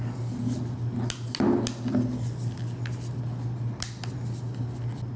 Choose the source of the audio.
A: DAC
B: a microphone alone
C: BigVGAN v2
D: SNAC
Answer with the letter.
B